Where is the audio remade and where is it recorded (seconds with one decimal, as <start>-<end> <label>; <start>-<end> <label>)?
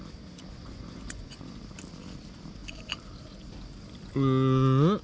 0.0-0.6 recorded; 0.6-1.6 remade; 1.6-5.0 recorded